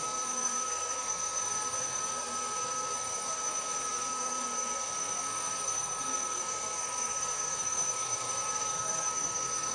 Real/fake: fake